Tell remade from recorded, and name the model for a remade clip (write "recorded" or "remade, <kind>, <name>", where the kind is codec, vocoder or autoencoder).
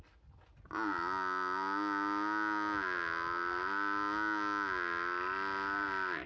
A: recorded